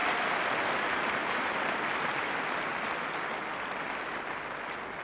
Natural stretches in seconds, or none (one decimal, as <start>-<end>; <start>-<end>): 0.0-5.0